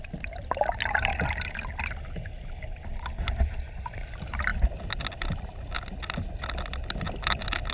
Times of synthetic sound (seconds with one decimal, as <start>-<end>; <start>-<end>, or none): none